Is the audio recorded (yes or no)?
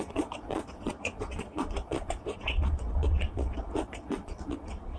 no